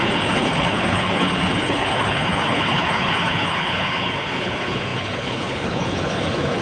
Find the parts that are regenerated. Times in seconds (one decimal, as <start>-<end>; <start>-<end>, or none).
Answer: 0.0-6.6